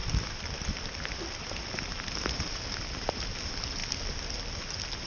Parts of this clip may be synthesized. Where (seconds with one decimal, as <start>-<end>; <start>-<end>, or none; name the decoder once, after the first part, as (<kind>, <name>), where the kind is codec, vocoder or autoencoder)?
0.0-3.1 (vocoder, BigVGAN v2)